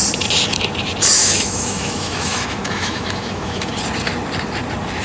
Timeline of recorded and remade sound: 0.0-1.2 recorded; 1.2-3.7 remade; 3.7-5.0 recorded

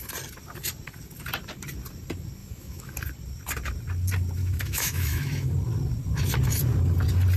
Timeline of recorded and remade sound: 0.0-2.4 recorded; 2.4-2.9 remade; 2.9-4.4 recorded; 4.4-5.5 remade; 5.5-7.4 recorded

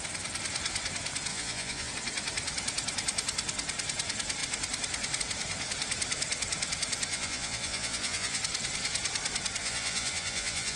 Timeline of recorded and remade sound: 0.0-1.3 recorded; 1.3-1.9 remade; 1.9-7.1 recorded; 7.1-8.4 remade; 8.4-9.6 recorded; 9.6-10.8 remade